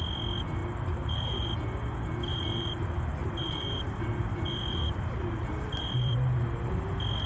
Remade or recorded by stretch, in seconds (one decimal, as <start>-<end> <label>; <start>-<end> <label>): 0.0-0.6 recorded; 0.6-1.5 remade; 1.5-2.3 recorded; 2.3-6.7 remade; 6.7-7.3 recorded